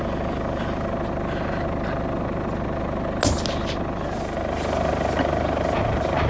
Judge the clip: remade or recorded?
recorded